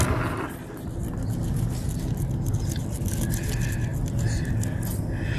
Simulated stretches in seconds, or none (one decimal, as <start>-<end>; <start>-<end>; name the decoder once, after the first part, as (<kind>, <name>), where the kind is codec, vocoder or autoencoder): none